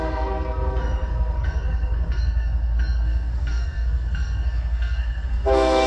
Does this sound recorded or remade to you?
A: remade